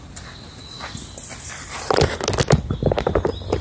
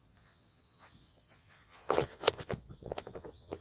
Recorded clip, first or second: first